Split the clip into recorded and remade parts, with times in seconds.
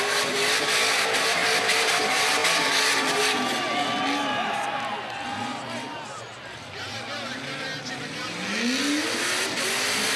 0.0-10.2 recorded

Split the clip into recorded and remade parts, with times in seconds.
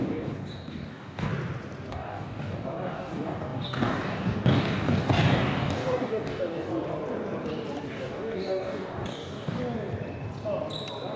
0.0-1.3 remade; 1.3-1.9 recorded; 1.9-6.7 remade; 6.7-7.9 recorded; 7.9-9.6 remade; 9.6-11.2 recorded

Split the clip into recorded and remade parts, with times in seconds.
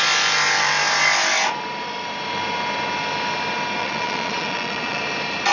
0.0-3.8 recorded; 3.8-5.0 remade; 5.0-5.5 recorded